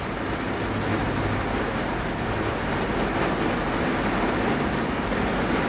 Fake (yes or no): no